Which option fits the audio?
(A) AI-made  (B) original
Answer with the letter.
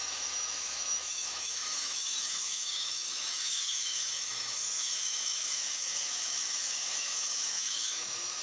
A